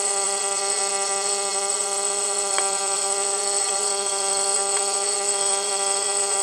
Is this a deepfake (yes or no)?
yes